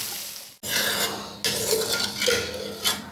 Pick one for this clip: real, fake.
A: real